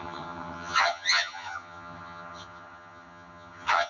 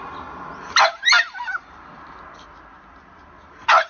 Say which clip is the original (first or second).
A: second